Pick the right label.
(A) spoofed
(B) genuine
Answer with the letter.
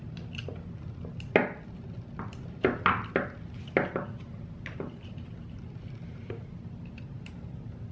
B